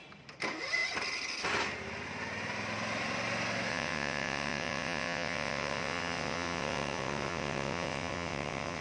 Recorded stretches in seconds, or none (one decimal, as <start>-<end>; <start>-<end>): 0.0-3.7